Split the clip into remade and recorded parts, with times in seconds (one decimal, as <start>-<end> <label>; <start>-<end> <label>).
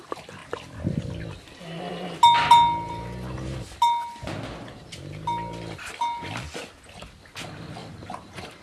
0.0-7.8 recorded; 7.8-8.6 remade